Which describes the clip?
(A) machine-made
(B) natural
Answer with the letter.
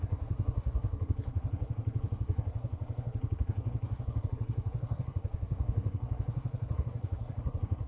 A